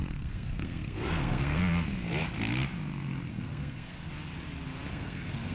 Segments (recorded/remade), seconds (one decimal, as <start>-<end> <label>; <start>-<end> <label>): 0.0-1.6 remade; 1.6-3.3 recorded; 3.3-4.1 remade; 4.1-4.9 recorded; 4.9-5.5 remade